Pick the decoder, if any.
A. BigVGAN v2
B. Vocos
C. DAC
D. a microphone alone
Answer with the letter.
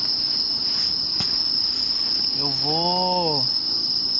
D